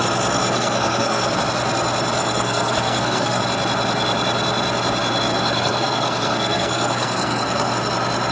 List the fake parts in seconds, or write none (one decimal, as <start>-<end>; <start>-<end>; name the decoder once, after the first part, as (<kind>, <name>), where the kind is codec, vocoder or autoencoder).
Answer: 0.4-1.4 (codec, SNAC); 2.2-3.4; 5.3-7.7